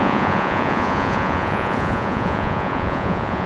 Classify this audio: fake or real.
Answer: fake